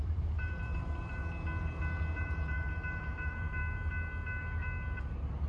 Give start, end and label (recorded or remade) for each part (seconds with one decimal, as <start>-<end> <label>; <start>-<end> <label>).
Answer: 0.0-1.2 remade; 1.2-2.2 recorded; 2.2-3.6 remade; 3.6-5.5 recorded